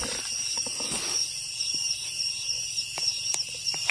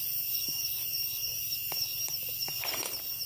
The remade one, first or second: first